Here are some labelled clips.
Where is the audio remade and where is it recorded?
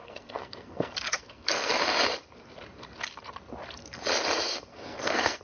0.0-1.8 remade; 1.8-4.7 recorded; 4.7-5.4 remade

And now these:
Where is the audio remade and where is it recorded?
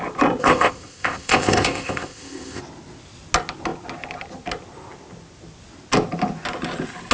0.0-0.4 recorded; 0.4-2.6 remade; 2.6-7.1 recorded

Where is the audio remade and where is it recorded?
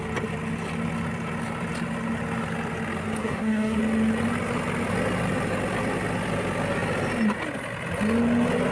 0.0-3.2 recorded; 3.2-3.8 remade; 3.8-8.7 recorded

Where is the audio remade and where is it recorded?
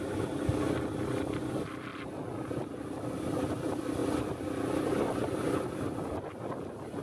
0.0-7.0 recorded